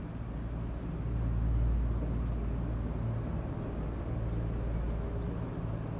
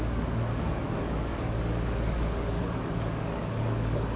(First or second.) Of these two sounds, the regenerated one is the second